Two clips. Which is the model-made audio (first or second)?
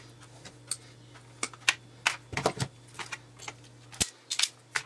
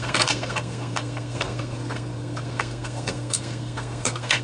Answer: second